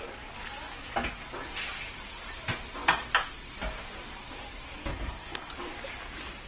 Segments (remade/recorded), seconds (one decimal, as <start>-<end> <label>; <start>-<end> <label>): 0.0-4.9 recorded; 4.9-5.5 remade; 5.5-6.5 recorded